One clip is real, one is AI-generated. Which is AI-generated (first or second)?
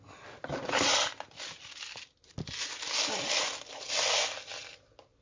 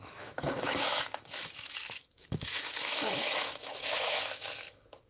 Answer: second